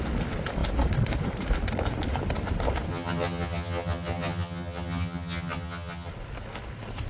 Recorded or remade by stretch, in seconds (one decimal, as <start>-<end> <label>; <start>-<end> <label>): 0.0-2.9 recorded; 2.9-6.1 remade; 6.1-7.1 recorded